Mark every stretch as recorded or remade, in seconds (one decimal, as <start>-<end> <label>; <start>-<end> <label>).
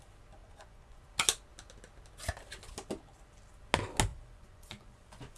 0.0-0.4 recorded; 0.4-1.0 remade; 1.0-4.1 recorded; 4.1-5.4 remade